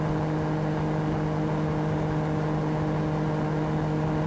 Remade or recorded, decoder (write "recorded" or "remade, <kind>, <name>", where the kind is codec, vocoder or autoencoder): recorded